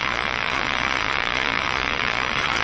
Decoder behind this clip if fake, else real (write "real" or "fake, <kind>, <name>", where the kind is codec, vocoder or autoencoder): fake, vocoder, Vocos